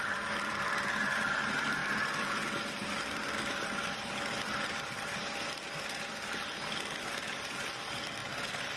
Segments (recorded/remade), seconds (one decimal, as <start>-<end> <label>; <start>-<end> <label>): 0.0-8.8 recorded